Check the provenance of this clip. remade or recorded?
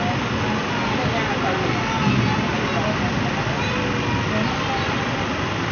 recorded